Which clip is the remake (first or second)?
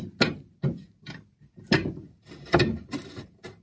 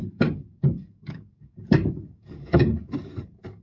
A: second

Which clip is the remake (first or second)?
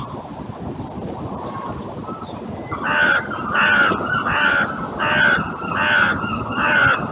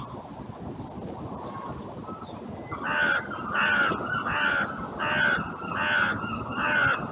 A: first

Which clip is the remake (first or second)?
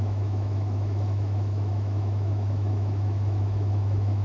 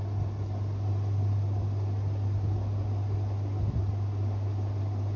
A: first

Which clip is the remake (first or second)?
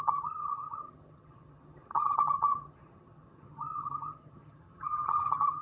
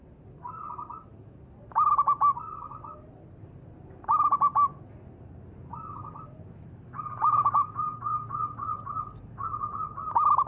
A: first